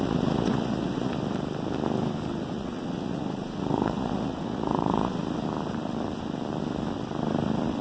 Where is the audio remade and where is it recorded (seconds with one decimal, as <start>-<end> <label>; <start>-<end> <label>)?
0.0-1.1 remade; 1.1-2.5 recorded; 2.5-5.2 remade; 5.2-7.8 recorded